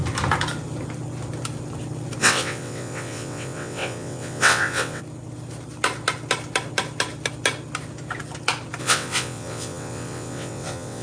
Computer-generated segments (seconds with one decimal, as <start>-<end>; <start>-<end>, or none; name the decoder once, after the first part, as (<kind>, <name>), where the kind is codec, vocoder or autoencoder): 2.2-5.0 (vocoder, WaveNeXt); 8.8-11.0